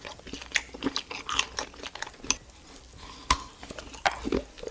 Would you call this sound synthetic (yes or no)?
no